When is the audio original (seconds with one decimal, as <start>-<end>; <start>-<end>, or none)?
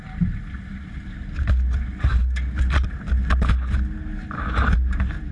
0.0-5.3